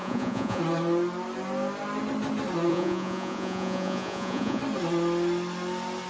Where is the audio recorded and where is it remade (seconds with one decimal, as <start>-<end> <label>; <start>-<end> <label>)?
0.0-0.6 remade; 0.6-2.7 recorded; 2.7-4.6 remade; 4.6-6.1 recorded